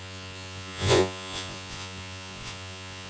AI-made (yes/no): yes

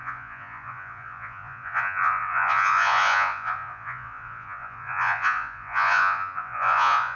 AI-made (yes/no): yes